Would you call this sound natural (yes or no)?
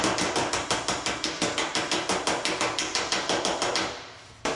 no